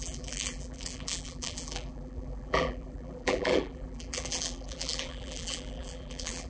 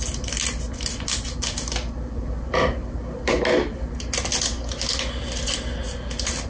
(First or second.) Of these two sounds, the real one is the second